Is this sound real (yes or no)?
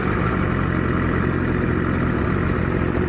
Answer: yes